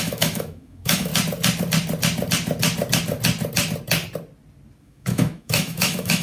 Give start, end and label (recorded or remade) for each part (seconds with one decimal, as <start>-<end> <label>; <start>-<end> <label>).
0.0-1.1 remade; 1.1-4.8 recorded; 4.8-6.2 remade